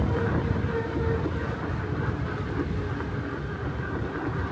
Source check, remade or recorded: recorded